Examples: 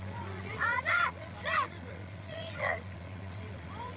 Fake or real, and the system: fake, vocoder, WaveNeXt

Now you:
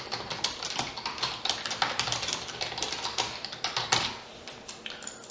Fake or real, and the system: real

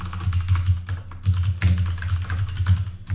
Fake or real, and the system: real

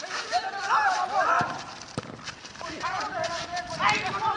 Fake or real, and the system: real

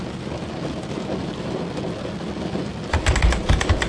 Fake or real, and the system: real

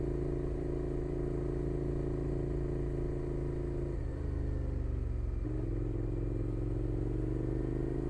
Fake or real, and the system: real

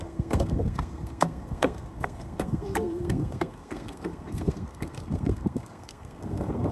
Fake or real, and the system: fake, codec, SNAC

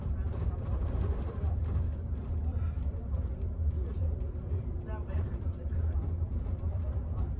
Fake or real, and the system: fake, vocoder, BigVGAN v2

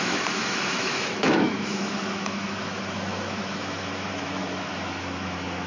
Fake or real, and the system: fake, autoencoder, DAC-VAE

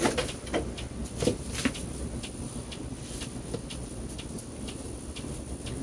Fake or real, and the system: real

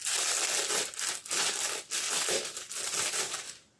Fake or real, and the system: real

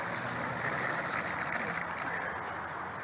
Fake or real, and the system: real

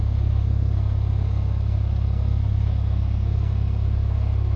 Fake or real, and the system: fake, codec, SNAC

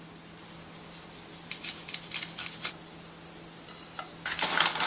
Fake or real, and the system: real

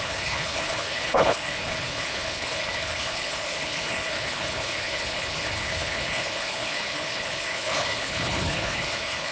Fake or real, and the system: fake, codec, HILCodec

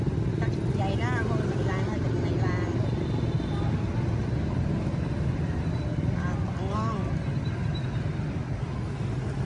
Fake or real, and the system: real